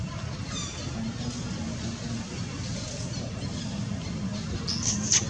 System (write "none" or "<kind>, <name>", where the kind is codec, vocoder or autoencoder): none